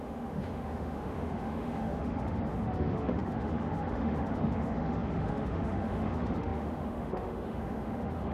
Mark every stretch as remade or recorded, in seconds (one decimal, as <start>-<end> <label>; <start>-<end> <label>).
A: 0.0-8.3 remade